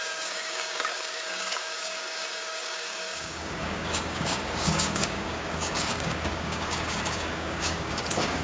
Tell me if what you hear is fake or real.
fake